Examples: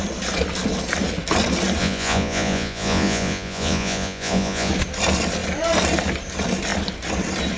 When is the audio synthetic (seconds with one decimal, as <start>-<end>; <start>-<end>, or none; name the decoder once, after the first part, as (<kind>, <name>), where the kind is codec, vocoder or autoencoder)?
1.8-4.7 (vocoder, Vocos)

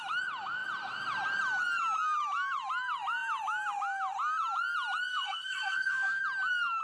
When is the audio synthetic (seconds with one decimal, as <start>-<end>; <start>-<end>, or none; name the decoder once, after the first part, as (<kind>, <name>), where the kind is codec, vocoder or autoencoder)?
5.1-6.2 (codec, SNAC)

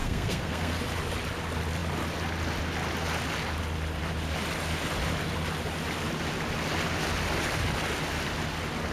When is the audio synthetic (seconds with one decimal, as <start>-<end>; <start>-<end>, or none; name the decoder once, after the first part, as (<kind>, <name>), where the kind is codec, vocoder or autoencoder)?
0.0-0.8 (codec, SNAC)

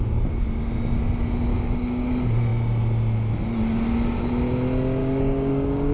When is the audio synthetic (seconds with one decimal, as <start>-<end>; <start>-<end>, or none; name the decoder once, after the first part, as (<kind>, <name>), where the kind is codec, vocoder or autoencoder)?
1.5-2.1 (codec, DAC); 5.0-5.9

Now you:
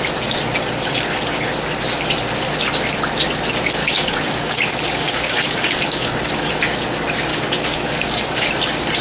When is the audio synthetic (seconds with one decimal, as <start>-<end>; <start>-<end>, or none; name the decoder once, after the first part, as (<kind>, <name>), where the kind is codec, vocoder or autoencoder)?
3.8-6.5 (codec, DAC); 7.3-8.5

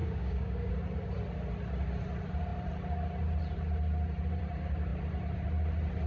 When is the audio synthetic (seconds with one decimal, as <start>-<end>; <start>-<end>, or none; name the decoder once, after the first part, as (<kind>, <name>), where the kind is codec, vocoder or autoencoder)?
0.0-0.7 (codec, DAC)

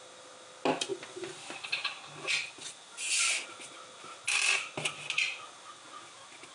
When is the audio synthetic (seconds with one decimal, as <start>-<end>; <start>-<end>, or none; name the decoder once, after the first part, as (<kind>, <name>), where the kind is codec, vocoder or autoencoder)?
none